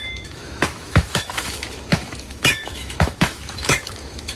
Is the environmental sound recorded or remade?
remade